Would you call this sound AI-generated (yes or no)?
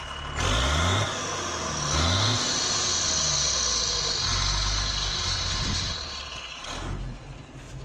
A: no